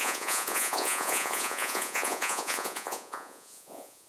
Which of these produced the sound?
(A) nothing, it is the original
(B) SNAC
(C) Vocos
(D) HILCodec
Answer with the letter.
C